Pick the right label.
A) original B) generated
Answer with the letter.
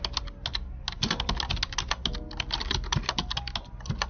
A